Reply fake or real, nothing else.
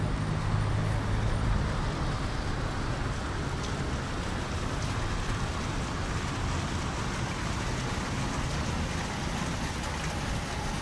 real